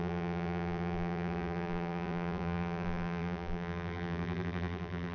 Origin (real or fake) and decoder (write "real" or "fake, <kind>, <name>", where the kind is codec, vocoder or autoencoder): fake, vocoder, BigVGAN v2